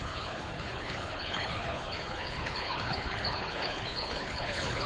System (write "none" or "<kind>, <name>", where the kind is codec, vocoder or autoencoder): codec, HILCodec